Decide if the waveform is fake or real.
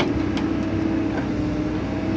real